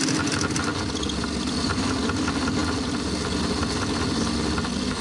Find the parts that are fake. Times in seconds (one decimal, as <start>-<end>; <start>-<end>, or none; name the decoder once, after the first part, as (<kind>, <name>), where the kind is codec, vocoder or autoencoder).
0.7-1.5 (vocoder, BigVGAN v2)